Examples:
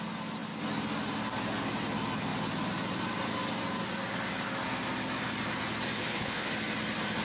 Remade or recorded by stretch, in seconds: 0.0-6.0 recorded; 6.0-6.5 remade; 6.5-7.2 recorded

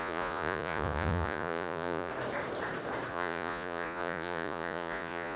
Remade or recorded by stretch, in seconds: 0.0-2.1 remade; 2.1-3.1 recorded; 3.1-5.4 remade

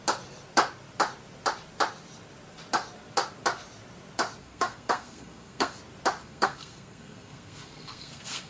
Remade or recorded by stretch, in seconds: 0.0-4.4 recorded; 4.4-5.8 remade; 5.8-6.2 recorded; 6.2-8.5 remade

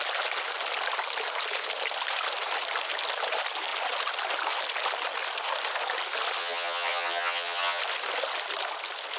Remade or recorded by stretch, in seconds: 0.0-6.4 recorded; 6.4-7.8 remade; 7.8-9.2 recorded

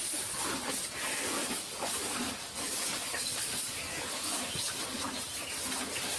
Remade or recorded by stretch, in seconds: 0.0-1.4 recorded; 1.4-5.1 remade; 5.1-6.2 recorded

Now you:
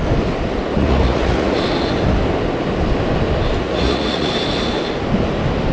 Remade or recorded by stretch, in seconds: 0.0-0.7 recorded; 0.7-1.6 remade; 1.6-3.6 recorded; 3.6-4.3 remade; 4.3-5.7 recorded

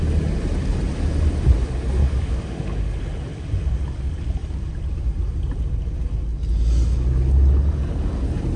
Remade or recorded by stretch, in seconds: 0.0-2.0 recorded; 2.0-3.0 remade; 3.0-8.6 recorded